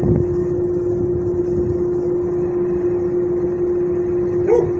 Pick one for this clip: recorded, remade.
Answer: recorded